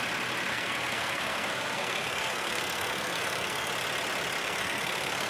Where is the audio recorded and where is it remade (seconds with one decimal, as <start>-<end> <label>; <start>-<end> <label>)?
0.0-0.5 recorded; 0.5-3.7 remade; 3.7-4.4 recorded; 4.4-5.3 remade